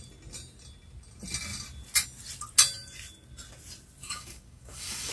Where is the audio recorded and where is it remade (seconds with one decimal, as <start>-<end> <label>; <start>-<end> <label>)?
0.0-4.0 recorded; 4.0-5.1 remade